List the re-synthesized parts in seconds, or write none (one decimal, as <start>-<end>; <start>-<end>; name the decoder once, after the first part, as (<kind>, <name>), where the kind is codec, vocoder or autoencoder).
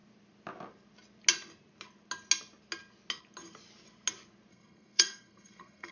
4.5-5.9 (codec, SNAC)